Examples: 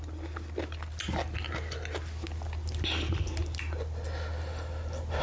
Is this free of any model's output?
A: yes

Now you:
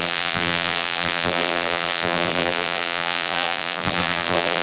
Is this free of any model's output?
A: no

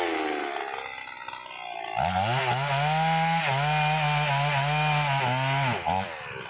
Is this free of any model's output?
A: yes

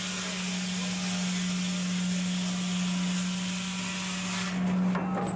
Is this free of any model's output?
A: yes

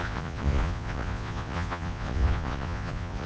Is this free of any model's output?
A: no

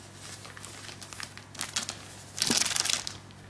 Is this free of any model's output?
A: yes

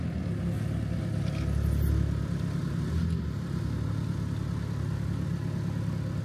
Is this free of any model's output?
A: yes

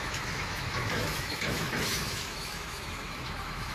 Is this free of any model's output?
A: no